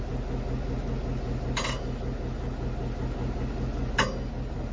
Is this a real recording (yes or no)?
yes